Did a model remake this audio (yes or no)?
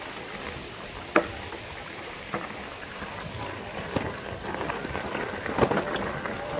yes